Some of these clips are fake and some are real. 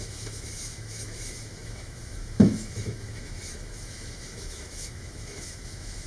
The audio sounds fake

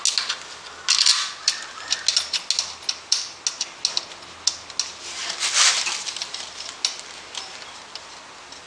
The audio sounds real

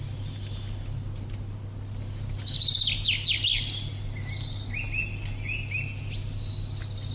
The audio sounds real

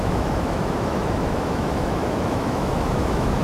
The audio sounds fake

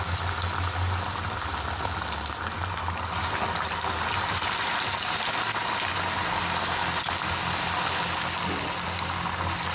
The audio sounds real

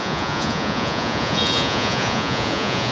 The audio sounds fake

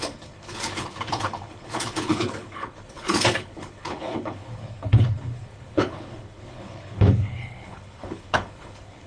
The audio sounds fake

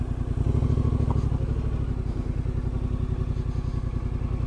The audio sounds real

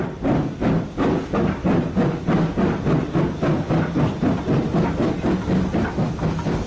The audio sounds real